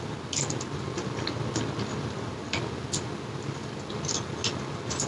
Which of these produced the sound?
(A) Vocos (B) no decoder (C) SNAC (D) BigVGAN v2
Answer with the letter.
B